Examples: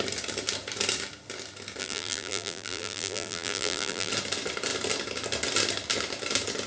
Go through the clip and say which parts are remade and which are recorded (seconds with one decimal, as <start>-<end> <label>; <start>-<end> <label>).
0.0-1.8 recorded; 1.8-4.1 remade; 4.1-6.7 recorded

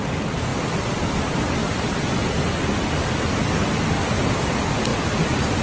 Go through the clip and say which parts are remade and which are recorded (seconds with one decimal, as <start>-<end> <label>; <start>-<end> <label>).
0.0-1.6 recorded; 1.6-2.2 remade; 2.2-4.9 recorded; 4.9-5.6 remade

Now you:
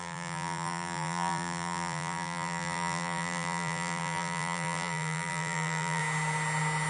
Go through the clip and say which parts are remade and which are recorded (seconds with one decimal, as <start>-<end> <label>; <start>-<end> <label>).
0.0-6.0 remade; 6.0-6.9 recorded